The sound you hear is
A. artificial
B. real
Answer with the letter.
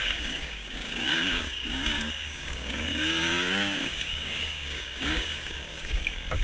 A